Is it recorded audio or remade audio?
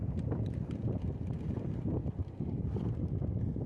recorded